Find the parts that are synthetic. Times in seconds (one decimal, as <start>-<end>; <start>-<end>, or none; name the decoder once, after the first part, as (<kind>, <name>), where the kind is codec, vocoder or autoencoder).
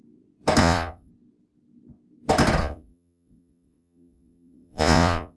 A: 0.6-1.1 (vocoder, Vocos); 2.6-5.4